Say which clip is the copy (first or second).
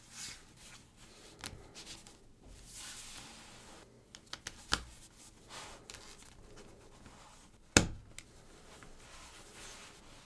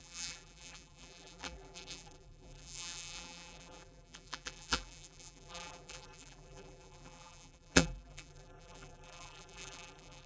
second